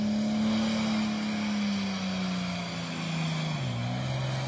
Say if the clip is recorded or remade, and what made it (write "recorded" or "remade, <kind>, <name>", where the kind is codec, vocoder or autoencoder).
recorded